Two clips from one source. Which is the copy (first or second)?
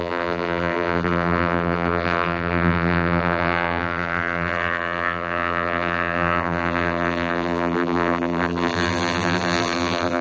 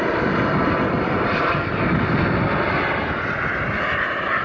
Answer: first